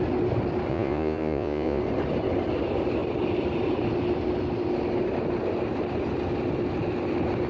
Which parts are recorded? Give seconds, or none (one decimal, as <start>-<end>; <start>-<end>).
0.0-0.7; 1.8-7.5